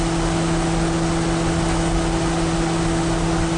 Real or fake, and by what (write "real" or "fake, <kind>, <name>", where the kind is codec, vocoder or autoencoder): real